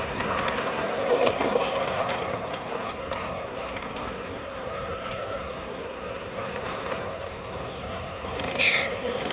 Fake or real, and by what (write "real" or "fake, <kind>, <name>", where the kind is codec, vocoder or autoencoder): fake, codec, SNAC